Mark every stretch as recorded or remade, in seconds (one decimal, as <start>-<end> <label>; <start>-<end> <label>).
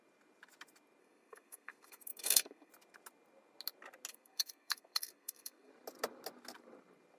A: 0.0-1.0 recorded; 1.0-2.7 remade; 2.7-4.1 recorded; 4.1-5.7 remade; 5.7-7.2 recorded